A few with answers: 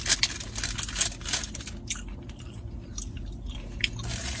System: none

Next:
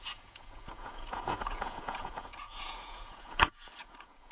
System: vocoder, Vocos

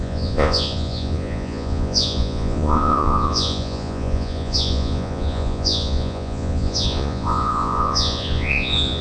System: vocoder, Vocos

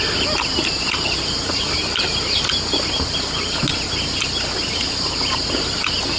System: none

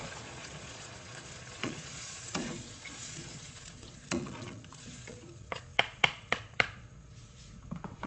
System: vocoder, Vocos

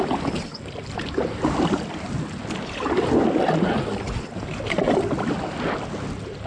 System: none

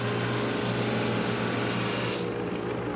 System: none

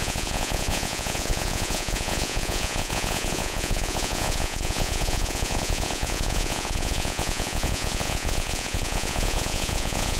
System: vocoder, Vocos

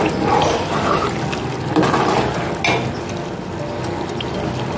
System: none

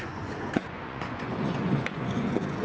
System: vocoder, Vocos